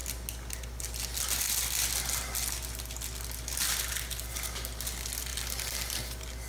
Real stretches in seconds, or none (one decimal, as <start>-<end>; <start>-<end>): 0.0-6.5